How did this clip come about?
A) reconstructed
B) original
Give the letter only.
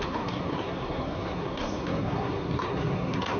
A